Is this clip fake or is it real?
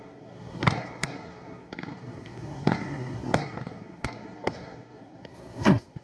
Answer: fake